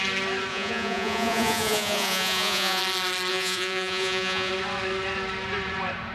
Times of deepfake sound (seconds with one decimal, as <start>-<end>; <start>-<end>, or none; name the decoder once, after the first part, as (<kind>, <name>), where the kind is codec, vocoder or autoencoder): 0.5-2.8 (vocoder, Vocos); 3.3-4.5